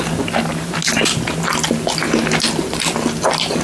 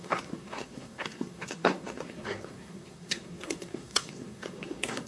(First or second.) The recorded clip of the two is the first